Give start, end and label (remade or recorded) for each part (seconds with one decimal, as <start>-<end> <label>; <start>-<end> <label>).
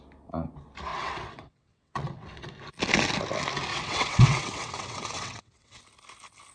0.0-0.9 recorded; 0.9-2.5 remade; 2.5-3.7 recorded; 3.7-5.8 remade; 5.8-6.5 recorded